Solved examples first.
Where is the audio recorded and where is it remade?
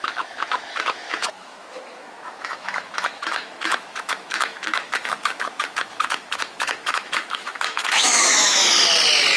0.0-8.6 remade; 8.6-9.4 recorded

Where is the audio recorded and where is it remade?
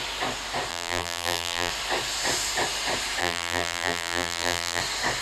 0.0-0.7 recorded; 0.7-1.7 remade; 1.7-3.2 recorded; 3.2-4.8 remade; 4.8-5.2 recorded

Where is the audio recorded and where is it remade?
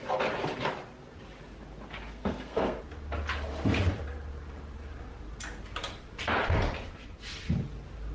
0.0-2.1 recorded; 2.1-2.8 remade; 2.8-8.1 recorded